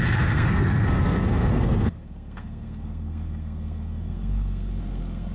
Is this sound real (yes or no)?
no